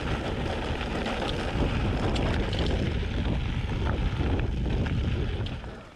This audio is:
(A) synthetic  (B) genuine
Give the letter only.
B